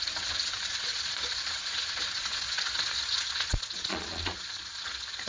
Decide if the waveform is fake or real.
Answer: fake